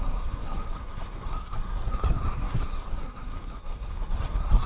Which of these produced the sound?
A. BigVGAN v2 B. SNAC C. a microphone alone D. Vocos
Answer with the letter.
B